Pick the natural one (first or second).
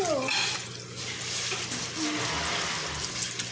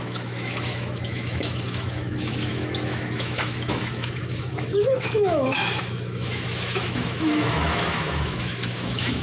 first